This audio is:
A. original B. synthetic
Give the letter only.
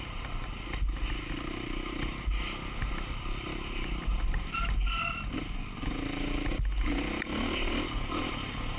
A